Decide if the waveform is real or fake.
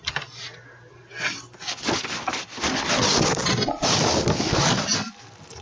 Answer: real